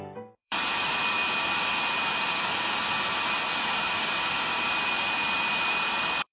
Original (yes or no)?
no